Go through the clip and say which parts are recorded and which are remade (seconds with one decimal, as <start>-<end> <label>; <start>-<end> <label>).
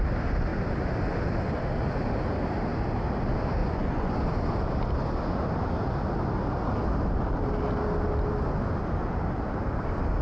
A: 0.0-3.6 recorded; 3.6-4.1 remade; 4.1-10.2 recorded